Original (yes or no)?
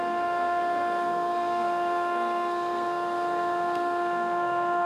no